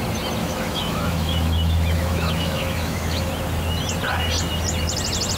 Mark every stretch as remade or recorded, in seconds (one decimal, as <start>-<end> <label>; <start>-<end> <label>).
0.0-0.4 recorded; 0.4-3.3 remade; 3.3-5.4 recorded